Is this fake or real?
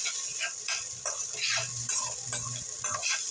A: real